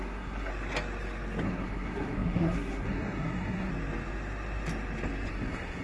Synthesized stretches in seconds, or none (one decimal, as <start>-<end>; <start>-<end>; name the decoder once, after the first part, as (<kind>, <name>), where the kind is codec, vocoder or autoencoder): 0.0-0.5 (codec, SNAC); 1.4-3.7; 5.3-5.8